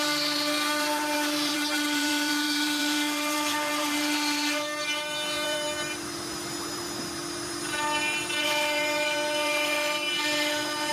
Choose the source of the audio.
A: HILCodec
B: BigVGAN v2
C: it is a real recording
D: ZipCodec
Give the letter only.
B